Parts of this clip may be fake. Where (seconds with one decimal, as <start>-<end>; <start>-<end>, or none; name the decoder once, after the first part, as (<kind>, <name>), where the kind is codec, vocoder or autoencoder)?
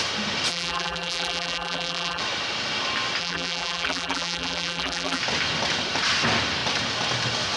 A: 0.5-2.2 (vocoder, BigVGAN v2); 3.2-5.2